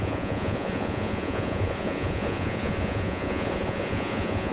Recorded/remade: remade